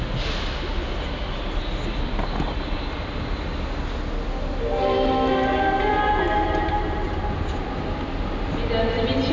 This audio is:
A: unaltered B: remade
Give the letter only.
A